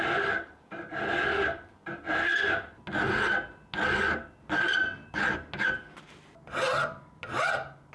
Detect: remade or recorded recorded